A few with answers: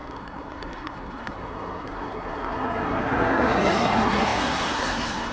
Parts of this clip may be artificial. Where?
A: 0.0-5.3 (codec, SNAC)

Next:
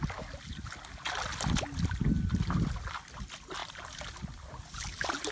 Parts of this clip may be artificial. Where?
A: none

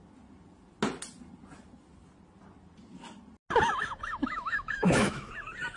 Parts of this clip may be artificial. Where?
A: 4.2-5.3 (autoencoder, DAC-VAE)

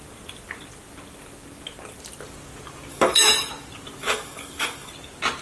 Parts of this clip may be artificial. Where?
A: 2.9-3.5 (autoencoder, DAC-VAE); 4.0-4.9

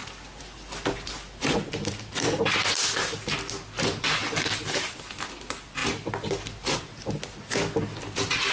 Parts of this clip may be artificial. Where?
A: none

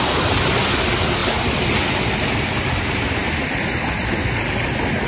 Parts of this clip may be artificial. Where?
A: none